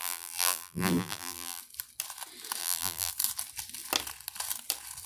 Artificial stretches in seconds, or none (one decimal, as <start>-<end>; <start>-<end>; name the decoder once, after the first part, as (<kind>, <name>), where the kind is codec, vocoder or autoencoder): 0.0-1.6 (vocoder, BigVGAN v2); 2.6-3.1